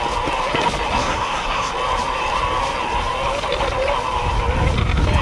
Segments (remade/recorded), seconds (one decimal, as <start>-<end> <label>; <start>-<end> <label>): 0.0-1.0 recorded; 1.0-1.7 remade; 1.7-5.2 recorded